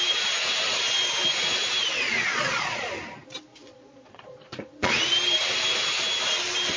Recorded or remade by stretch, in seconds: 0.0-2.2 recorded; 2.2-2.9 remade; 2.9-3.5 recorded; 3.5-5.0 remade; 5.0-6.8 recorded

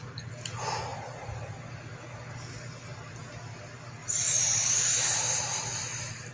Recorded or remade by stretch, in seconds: 0.0-4.0 recorded; 4.0-5.6 remade; 5.6-6.3 recorded

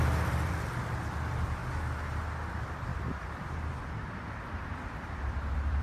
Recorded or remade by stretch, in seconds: 0.0-1.6 remade; 1.6-2.5 recorded; 2.5-2.9 remade; 2.9-4.8 recorded; 4.8-5.8 remade

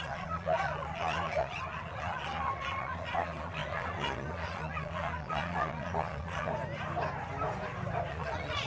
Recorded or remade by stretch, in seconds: 0.0-6.5 remade; 6.5-8.1 recorded; 8.1-8.7 remade

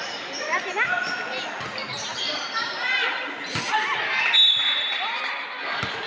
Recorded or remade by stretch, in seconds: 0.0-1.9 recorded; 1.9-3.3 remade; 3.3-4.6 recorded; 4.6-5.2 remade; 5.2-6.1 recorded

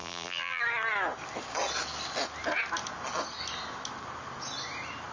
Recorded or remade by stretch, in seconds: 0.0-0.6 remade; 0.6-5.1 recorded